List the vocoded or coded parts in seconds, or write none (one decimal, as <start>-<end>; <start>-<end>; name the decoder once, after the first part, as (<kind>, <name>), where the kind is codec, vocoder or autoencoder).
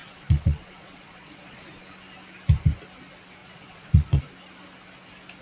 0.0-1.8 (vocoder, Vocos); 3.4-4.2